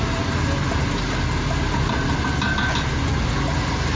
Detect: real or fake real